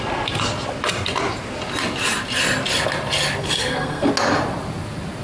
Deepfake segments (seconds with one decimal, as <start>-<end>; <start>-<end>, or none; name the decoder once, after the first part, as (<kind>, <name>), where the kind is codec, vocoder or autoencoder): 3.4-4.1 (codec, SNAC)